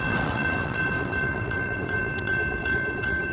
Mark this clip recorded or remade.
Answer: remade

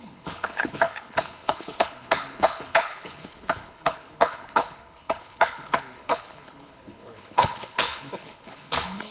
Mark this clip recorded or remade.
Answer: remade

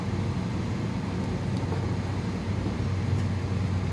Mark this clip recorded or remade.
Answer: recorded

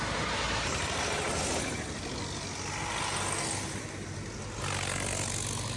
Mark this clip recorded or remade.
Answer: recorded